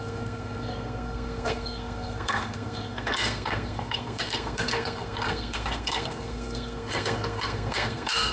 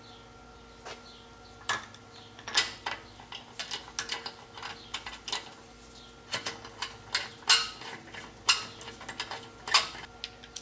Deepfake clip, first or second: first